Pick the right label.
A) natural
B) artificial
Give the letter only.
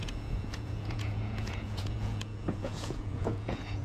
B